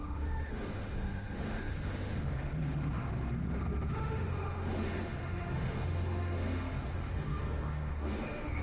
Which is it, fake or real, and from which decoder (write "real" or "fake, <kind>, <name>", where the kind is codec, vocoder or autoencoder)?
fake, autoencoder, DAC-VAE